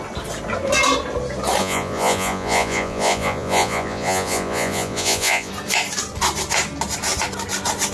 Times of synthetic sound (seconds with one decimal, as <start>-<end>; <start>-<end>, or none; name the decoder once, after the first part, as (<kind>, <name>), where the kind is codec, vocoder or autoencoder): 1.6-5.5 (vocoder, Vocos)